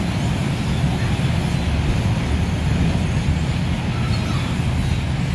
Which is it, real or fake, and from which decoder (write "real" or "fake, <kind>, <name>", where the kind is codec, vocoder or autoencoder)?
real